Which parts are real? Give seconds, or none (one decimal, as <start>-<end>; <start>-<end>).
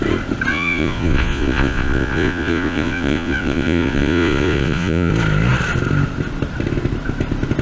0.0-0.5; 5.1-7.6